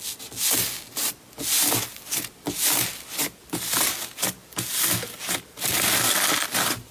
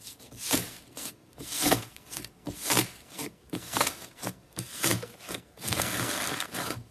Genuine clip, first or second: first